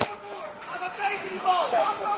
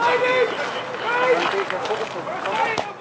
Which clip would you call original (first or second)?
second